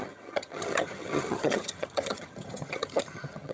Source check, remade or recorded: remade